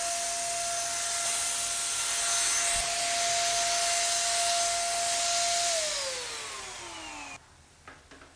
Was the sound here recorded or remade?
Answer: recorded